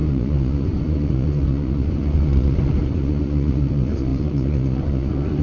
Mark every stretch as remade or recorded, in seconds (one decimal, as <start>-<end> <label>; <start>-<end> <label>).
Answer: 0.0-5.4 remade